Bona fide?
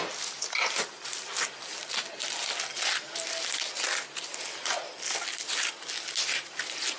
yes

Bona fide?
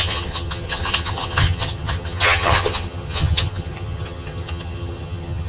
no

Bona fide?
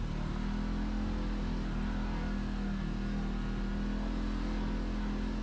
yes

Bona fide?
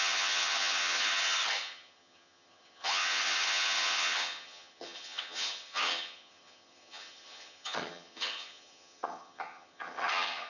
no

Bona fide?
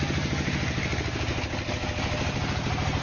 yes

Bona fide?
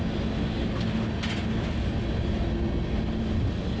yes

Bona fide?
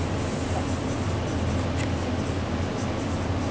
yes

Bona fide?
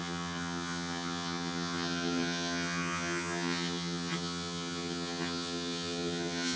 no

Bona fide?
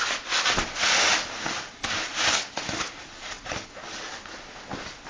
yes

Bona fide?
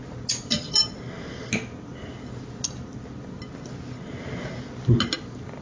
yes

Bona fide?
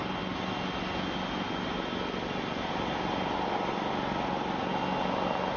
yes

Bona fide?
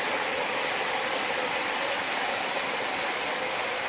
yes